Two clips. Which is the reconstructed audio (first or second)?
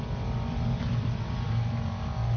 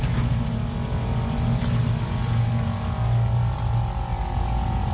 first